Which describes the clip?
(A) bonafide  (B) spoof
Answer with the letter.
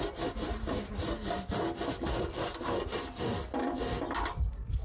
A